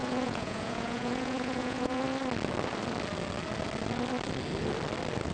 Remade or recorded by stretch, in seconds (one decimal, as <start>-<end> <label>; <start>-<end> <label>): 0.0-2.0 remade; 2.0-5.3 recorded